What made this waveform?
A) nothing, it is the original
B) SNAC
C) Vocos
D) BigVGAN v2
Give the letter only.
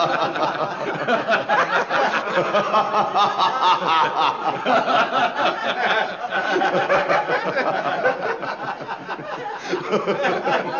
A